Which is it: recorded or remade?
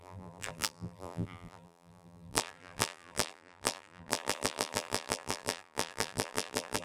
remade